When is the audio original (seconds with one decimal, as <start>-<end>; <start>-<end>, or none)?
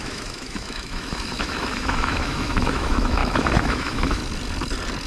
4.2-5.1